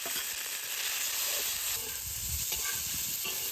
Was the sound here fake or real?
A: real